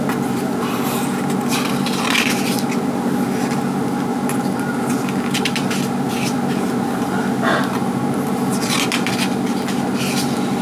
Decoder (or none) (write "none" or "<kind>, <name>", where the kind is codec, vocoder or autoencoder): none